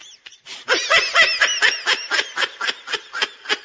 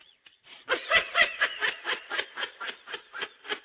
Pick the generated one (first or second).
second